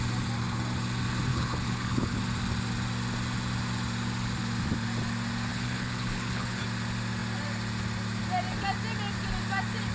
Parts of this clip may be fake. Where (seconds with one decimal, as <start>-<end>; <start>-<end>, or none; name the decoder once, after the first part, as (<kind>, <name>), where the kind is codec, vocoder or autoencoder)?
1.3-2.2 (codec, HILCodec); 5.5-6.6

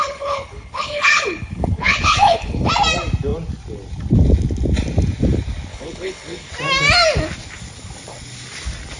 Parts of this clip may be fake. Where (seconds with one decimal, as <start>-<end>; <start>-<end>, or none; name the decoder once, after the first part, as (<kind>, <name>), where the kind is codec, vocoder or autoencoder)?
0.0-2.7 (codec, HILCodec); 5.7-6.5

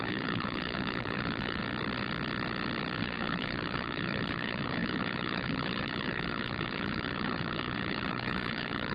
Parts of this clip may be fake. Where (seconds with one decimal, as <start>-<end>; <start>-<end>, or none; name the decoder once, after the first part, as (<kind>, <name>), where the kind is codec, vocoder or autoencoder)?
0.0-1.6 (codec, HILCodec); 3.0-8.9

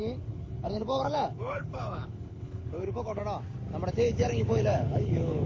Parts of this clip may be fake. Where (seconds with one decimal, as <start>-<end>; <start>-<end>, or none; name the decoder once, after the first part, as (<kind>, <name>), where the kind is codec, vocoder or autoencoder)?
0.0-3.2 (codec, HILCodec); 3.9-5.5

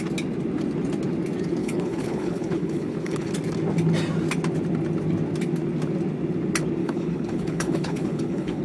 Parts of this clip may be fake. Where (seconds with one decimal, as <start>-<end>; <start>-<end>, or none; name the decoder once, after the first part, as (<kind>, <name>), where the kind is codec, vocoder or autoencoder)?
1.6-3.3 (codec, HILCodec); 6.8-8.6

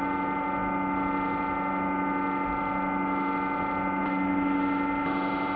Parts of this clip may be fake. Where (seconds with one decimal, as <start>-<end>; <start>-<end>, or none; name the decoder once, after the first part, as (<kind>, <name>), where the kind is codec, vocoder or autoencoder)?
none

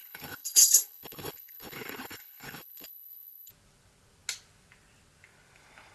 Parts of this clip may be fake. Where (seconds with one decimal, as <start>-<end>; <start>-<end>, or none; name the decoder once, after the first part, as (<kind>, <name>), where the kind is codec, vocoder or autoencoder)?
0.0-3.5 (codec, HILCodec)

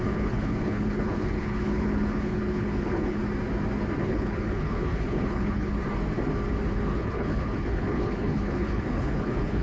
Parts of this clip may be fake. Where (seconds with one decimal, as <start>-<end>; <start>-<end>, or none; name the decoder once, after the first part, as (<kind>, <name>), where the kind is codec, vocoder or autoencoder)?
0.0-3.2 (codec, HILCodec); 4.0-5.8; 6.7-9.6